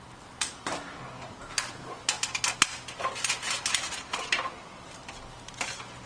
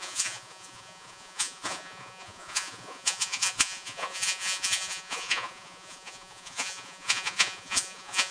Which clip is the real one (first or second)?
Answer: first